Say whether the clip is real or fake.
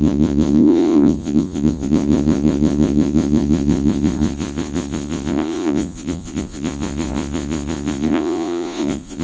fake